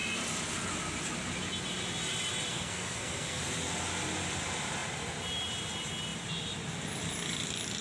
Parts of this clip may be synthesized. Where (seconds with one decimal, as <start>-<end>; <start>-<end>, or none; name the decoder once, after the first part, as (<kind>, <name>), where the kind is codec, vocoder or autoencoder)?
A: 2.5-3.4 (codec, SNAC)